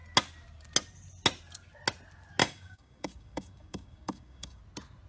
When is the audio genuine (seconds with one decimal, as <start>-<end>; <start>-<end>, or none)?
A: 0.0-2.4; 4.6-5.1